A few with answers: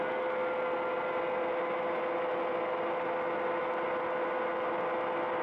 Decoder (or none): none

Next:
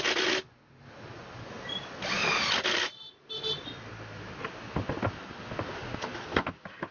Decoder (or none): none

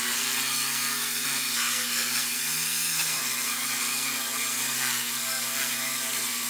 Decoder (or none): codec, SNAC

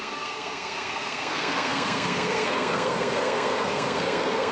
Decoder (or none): codec, SNAC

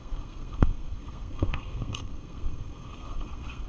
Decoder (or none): codec, SNAC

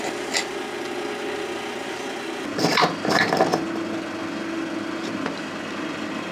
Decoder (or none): none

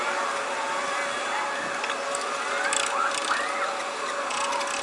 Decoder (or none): none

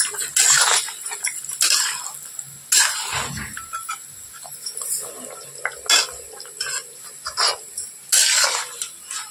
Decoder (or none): none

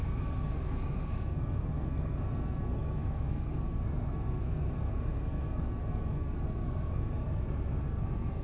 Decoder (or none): codec, SNAC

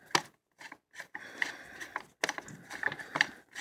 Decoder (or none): none